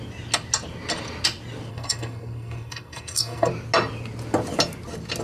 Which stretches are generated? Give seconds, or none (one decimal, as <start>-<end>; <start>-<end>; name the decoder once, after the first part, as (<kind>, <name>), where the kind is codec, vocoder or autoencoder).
1.7-3.5 (codec, SNAC)